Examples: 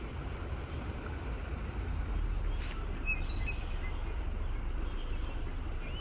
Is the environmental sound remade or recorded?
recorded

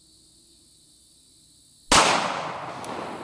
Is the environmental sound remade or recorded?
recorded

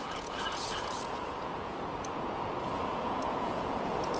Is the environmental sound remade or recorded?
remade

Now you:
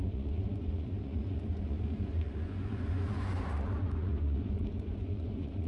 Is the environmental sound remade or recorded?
remade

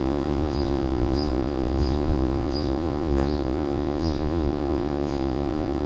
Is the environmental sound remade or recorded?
remade